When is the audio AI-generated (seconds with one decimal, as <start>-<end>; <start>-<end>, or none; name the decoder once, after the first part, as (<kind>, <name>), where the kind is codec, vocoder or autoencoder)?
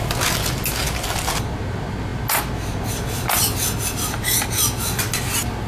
none